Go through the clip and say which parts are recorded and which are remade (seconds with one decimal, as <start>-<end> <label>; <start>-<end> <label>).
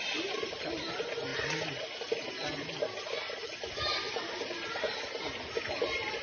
0.0-6.2 recorded